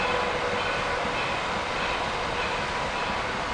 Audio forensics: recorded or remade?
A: recorded